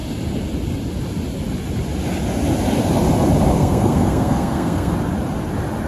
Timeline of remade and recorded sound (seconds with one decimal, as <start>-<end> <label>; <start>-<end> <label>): 0.0-3.5 recorded; 3.5-4.9 remade; 4.9-5.9 recorded